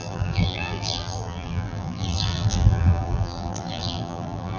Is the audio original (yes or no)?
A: no